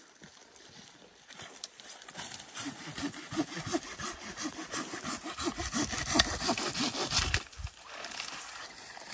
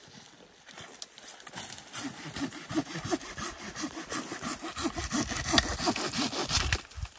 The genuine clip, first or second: second